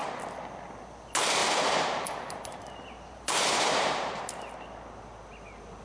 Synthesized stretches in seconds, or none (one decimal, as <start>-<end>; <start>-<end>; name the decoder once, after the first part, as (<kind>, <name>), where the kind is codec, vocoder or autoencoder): 1.4-4.2 (vocoder, BigVGAN v2)